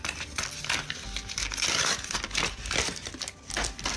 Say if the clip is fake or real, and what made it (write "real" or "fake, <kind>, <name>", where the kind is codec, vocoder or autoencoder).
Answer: real